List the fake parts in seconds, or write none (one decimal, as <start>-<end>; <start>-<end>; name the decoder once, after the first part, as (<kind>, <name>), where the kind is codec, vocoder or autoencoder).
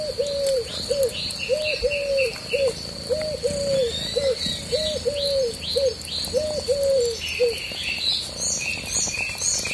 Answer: none